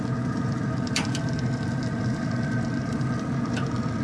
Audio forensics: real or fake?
fake